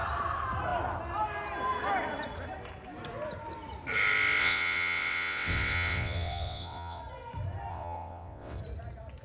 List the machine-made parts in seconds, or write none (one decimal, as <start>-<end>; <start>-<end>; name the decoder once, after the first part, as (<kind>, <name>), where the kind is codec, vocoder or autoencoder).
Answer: 4.4-7.0 (vocoder, WaveNeXt); 7.7-8.6